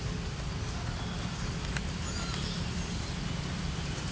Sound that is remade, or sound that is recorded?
recorded